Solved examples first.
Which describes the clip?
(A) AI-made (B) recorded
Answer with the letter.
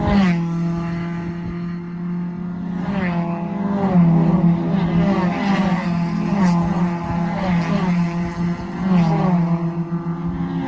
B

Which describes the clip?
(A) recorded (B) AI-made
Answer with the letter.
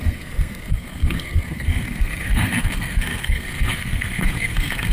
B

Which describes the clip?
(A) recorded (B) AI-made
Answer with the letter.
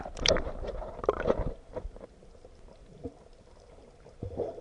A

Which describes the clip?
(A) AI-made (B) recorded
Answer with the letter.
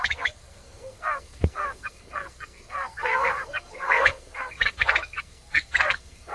A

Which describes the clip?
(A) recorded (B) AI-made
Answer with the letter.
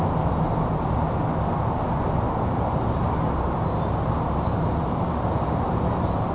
A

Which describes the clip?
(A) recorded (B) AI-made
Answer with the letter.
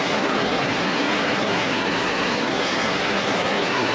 B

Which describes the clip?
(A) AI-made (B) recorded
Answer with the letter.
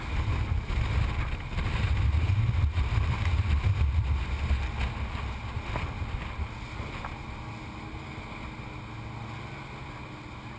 B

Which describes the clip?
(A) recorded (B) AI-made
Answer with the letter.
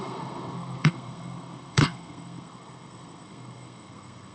B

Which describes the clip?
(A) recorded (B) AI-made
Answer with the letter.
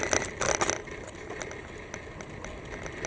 A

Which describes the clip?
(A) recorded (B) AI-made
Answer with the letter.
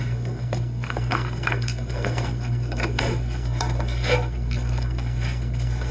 B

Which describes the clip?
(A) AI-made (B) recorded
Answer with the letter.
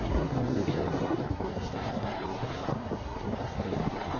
A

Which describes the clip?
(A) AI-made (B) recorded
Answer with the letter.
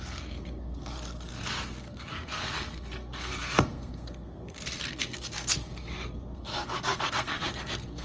A